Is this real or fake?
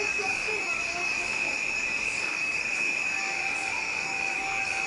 fake